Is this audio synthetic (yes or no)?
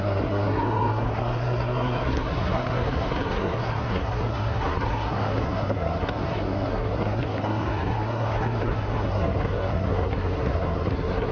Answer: yes